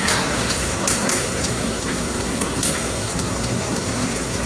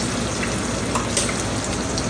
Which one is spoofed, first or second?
first